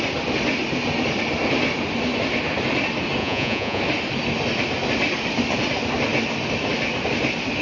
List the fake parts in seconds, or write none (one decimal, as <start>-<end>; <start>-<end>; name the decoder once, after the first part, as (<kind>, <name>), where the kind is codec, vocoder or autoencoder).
3.2-3.8 (vocoder, Vocos)